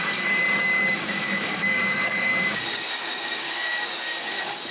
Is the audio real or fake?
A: fake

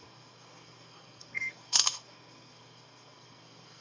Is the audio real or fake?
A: fake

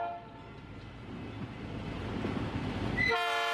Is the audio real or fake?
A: real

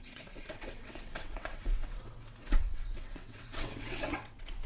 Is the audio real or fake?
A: fake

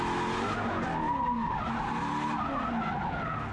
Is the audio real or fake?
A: real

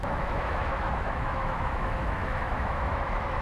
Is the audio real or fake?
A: fake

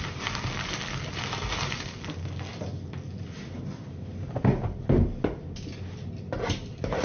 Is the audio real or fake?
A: real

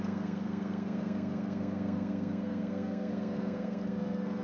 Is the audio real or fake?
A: fake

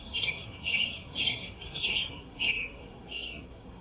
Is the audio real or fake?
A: fake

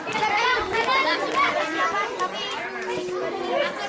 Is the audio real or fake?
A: real